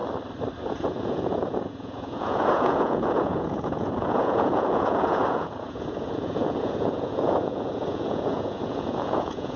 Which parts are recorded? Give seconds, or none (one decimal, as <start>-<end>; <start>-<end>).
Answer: 0.0-0.6